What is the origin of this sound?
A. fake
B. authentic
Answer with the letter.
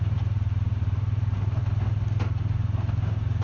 B